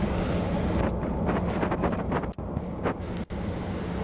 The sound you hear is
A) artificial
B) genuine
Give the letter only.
B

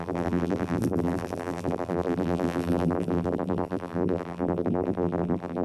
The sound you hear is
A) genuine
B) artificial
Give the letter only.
B